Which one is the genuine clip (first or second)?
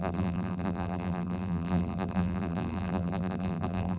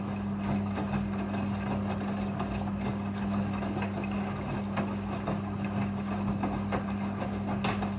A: second